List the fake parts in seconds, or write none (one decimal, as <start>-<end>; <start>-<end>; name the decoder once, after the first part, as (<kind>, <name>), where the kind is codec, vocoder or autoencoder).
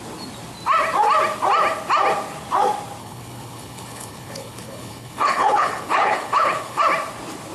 3.0-6.8 (codec, HILCodec)